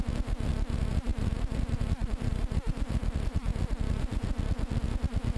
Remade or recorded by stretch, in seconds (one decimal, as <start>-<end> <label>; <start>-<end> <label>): 0.0-1.1 recorded; 1.1-4.2 remade; 4.2-5.4 recorded